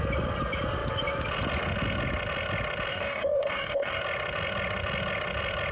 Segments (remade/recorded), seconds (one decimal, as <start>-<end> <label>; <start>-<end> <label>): 0.0-2.9 recorded; 2.9-4.0 remade; 4.0-5.7 recorded

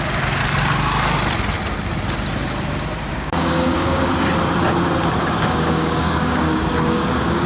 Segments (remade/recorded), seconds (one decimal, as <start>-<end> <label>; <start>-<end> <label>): 0.0-0.4 remade; 0.4-3.1 recorded; 3.1-4.1 remade; 4.1-5.2 recorded; 5.2-7.5 remade